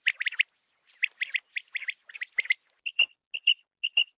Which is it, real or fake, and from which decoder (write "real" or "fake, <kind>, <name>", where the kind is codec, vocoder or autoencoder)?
real